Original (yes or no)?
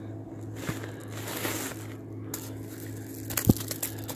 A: yes